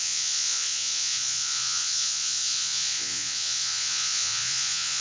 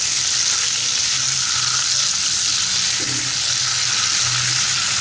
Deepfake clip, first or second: first